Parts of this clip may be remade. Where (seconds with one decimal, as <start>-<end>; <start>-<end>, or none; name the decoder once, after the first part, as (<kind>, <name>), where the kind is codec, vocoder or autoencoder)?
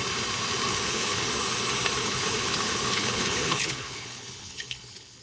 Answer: 0.7-1.3 (codec, HILCodec); 2.0-5.2